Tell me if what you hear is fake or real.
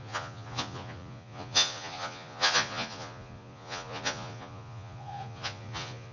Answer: fake